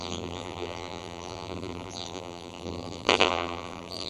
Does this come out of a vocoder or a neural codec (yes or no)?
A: yes